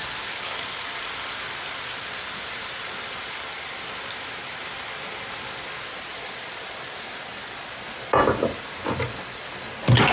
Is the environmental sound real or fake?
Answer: real